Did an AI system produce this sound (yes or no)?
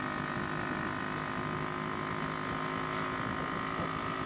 no